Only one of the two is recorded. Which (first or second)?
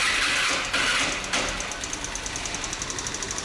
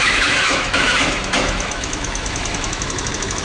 first